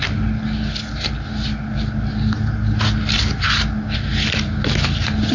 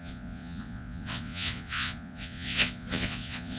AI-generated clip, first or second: second